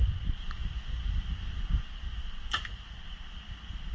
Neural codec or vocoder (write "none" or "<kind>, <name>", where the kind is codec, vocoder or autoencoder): none